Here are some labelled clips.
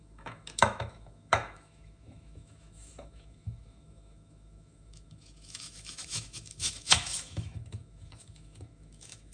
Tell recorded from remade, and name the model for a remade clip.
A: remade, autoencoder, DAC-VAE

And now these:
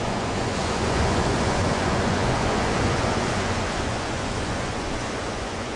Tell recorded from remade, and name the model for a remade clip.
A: remade, vocoder, Vocos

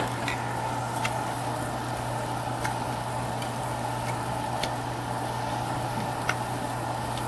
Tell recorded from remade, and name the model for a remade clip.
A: recorded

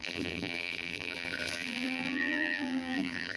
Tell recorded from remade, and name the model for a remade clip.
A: remade, vocoder, BigVGAN v2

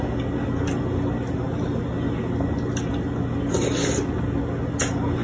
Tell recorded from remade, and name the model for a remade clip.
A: recorded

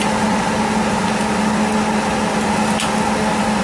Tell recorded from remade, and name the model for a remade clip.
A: recorded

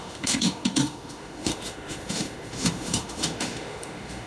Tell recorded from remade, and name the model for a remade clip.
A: remade, autoencoder, DAC-VAE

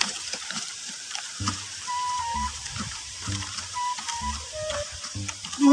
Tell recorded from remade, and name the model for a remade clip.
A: remade, vocoder, BigVGAN v2